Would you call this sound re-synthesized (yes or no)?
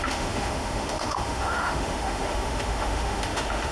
yes